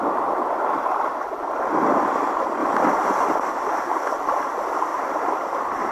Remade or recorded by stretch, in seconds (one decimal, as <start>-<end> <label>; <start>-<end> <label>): 0.0-2.6 recorded; 2.6-3.4 remade; 3.4-5.9 recorded